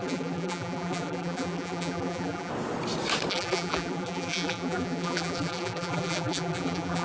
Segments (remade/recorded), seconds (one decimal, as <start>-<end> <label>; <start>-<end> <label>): 0.0-2.5 remade; 2.5-3.3 recorded; 3.3-7.0 remade